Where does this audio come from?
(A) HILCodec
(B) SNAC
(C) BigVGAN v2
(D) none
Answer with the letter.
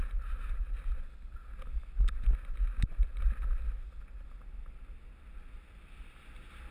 D